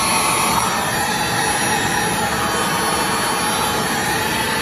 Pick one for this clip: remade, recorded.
recorded